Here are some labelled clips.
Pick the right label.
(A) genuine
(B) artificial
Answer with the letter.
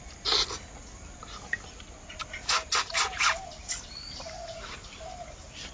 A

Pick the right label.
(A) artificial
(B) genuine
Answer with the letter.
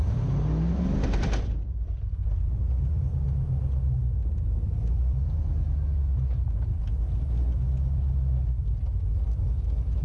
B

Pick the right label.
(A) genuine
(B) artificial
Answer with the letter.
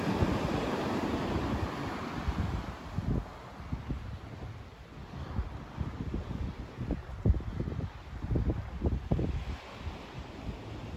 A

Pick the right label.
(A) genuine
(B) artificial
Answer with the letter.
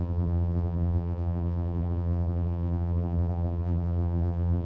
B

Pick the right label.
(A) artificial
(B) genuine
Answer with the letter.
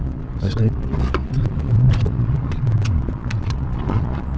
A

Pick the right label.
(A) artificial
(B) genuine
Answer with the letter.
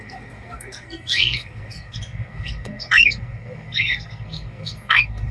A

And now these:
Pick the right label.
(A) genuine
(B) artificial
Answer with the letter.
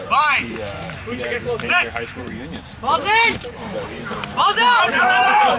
B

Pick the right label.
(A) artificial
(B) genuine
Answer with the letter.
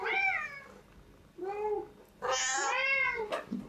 B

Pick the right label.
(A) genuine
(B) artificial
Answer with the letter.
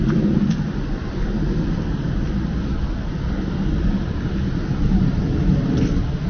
A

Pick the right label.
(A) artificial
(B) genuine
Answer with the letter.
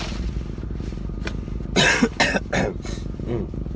B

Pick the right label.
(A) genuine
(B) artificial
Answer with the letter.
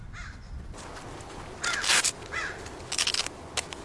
A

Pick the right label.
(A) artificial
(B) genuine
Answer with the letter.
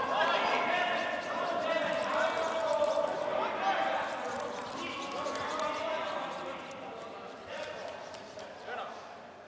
B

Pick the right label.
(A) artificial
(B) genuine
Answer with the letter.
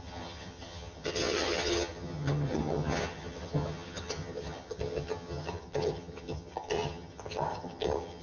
A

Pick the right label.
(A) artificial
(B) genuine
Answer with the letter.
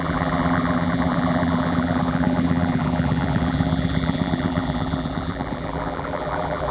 A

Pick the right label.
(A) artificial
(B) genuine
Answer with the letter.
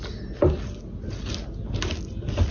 B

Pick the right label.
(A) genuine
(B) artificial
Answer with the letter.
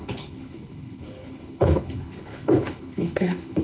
B